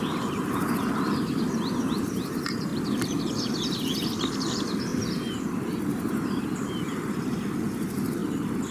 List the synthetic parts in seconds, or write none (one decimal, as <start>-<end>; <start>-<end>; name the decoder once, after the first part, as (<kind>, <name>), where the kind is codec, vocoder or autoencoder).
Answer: 0.0-4.9 (vocoder, BigVGAN v2); 6.4-8.2

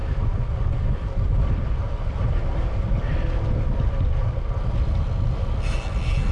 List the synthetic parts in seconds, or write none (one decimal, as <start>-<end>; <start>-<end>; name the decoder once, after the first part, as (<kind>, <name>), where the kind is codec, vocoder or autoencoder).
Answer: 0.0-3.0 (vocoder, BigVGAN v2)